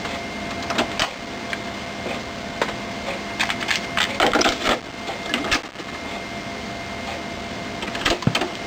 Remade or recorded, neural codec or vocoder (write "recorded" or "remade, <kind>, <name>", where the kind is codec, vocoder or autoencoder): recorded